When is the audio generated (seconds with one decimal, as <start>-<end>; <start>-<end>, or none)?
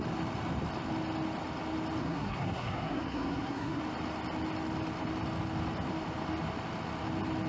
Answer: 2.0-3.8